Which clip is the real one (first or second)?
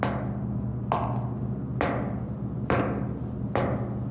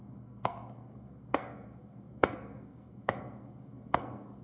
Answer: first